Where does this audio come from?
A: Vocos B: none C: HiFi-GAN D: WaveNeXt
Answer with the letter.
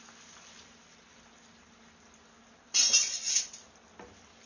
B